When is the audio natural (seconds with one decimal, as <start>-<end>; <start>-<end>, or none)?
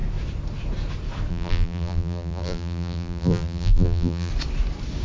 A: 0.0-1.3; 4.3-5.0